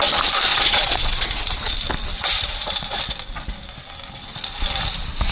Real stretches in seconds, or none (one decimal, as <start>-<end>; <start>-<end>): 0.0-0.5; 1.7-2.1; 3.0-5.3